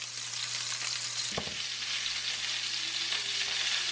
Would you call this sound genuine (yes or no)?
yes